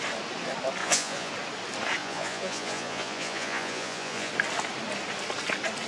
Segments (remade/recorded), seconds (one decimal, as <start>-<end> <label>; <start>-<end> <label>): 0.0-0.8 recorded; 0.8-1.3 remade; 1.3-2.0 recorded; 2.0-4.3 remade; 4.3-5.9 recorded